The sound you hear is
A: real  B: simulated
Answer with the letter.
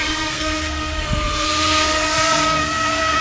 B